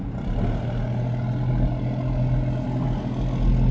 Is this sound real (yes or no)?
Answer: yes